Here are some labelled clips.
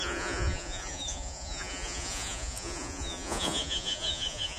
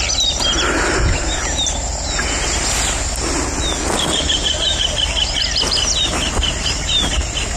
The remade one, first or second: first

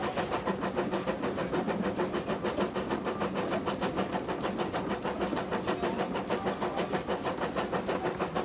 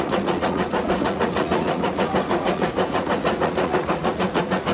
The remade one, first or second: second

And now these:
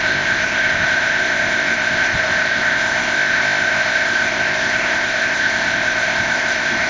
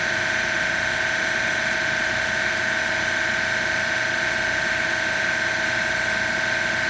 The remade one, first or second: first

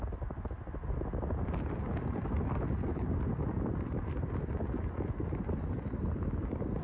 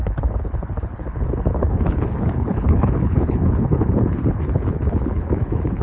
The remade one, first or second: second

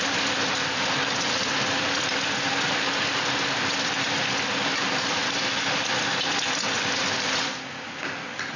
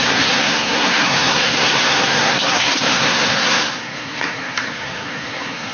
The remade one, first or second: second